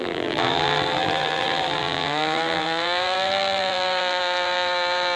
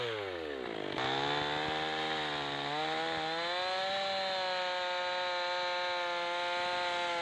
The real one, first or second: second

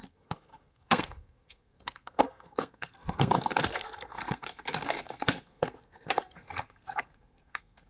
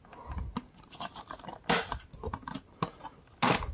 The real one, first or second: second